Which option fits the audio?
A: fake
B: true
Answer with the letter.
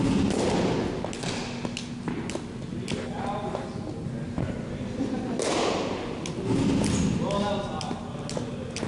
B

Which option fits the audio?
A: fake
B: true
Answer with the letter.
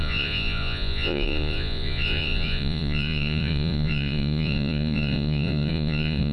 A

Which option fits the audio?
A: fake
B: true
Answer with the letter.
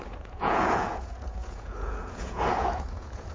A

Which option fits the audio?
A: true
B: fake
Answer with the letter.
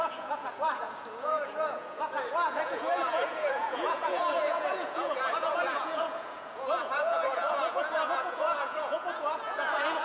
B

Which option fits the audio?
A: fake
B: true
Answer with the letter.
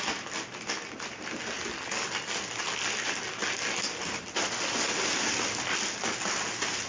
B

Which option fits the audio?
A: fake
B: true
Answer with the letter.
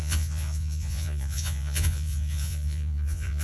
A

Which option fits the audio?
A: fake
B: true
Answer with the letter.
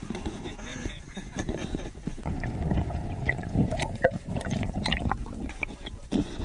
A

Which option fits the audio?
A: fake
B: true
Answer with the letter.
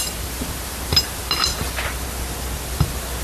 B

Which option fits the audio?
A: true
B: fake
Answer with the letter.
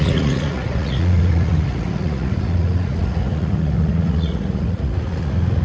B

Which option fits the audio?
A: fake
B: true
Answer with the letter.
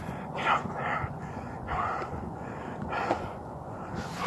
A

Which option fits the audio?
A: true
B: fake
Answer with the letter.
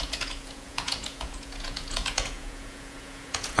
B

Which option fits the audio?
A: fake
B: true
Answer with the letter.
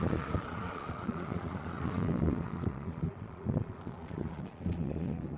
A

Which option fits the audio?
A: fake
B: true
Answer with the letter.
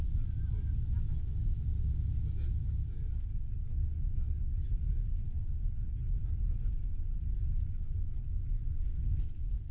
B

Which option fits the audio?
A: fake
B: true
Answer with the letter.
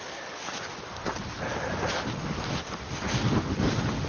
B